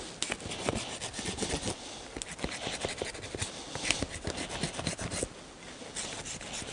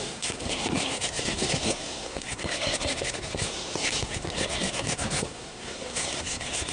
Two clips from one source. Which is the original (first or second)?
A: first